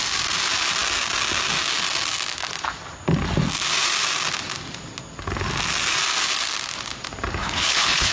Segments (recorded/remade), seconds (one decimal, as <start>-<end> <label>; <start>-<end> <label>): 0.0-7.4 recorded; 7.4-8.1 remade